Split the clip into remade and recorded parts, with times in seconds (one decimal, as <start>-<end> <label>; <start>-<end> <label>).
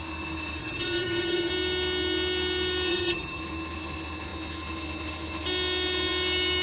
0.0-0.6 recorded; 0.6-1.5 remade; 1.5-2.9 recorded; 2.9-3.4 remade; 3.4-6.6 recorded